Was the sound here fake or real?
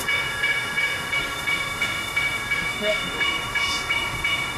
fake